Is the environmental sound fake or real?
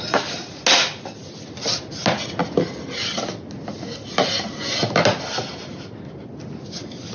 real